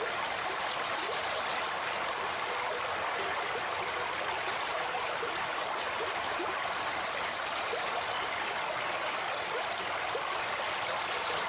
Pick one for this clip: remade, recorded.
recorded